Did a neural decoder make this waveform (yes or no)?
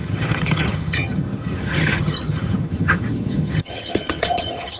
yes